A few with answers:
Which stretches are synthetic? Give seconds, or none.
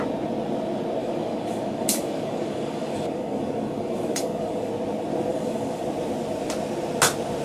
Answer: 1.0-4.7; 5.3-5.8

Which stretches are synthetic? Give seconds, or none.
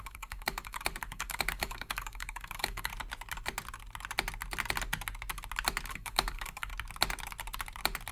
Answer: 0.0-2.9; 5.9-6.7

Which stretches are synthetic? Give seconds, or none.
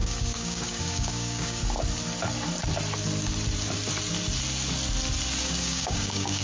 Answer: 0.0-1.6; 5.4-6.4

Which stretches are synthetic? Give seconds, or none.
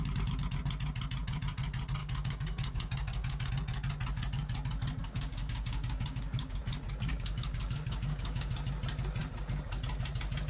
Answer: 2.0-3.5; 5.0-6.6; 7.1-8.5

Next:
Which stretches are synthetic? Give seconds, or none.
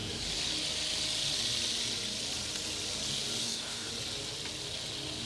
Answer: 3.4-3.9